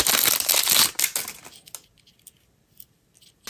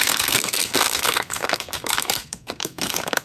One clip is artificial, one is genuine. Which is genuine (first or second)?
first